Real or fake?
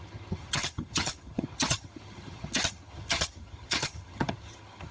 fake